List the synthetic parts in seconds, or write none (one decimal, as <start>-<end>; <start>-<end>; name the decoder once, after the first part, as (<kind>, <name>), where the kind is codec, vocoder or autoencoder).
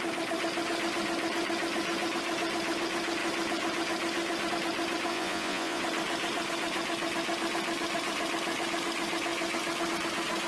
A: 5.1-5.8 (vocoder, Vocos)